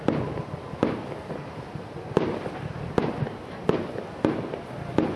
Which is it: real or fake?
real